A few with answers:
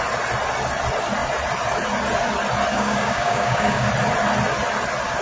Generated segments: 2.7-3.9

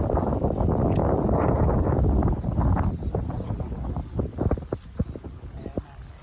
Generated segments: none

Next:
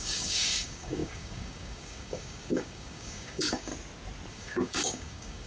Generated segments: 0.0-3.7; 4.3-5.5

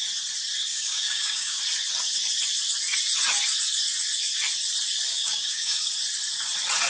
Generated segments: 0.7-1.6; 5.1-5.9

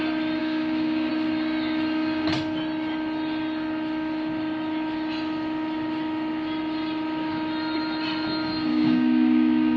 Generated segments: 0.4-1.1; 8.7-9.8

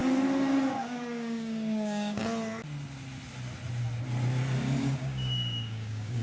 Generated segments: 0.8-2.2; 4.8-6.2